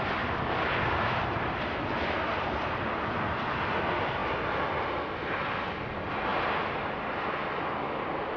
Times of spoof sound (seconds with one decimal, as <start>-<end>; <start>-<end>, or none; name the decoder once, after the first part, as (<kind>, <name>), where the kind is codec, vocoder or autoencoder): none